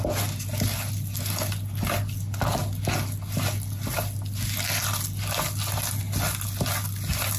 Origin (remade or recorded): recorded